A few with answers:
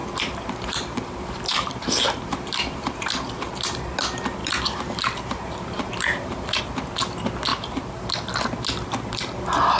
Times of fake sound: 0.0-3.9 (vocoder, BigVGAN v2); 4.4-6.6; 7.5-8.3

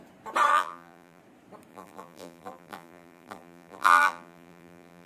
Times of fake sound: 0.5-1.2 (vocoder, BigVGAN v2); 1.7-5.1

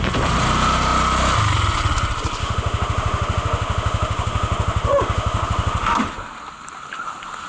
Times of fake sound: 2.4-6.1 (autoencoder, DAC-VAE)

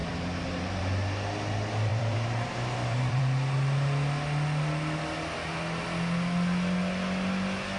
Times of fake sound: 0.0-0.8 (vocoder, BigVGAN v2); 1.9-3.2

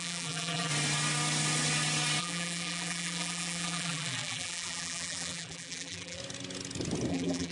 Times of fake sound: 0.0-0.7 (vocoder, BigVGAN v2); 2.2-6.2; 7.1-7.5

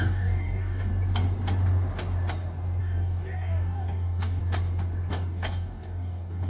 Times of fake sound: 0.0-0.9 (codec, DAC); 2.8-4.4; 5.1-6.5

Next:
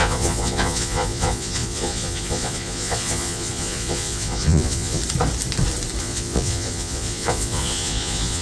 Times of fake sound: 0.0-5.0 (vocoder, Vocos); 6.0-8.4